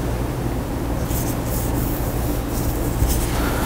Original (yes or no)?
yes